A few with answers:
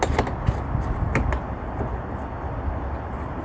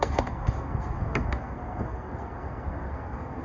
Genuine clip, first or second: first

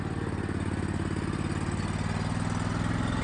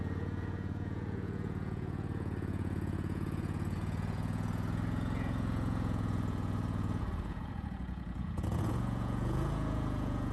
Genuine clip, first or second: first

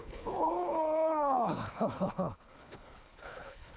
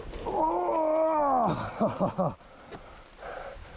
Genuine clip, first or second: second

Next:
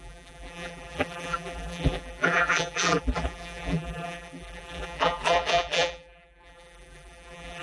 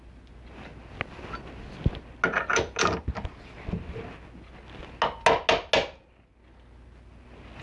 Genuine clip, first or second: second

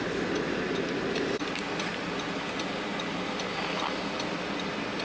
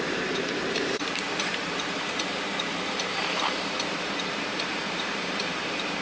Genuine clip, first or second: first